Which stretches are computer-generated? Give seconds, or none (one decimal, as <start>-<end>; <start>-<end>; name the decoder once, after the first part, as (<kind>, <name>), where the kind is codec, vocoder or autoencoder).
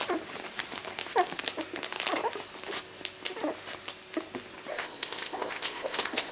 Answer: 4.7-6.3 (codec, ZipCodec)